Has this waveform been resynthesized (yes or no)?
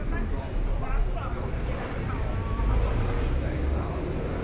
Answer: no